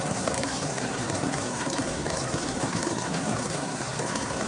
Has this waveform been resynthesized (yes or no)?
yes